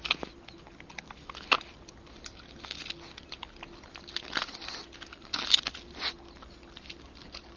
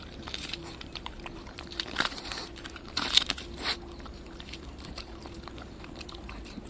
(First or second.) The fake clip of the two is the second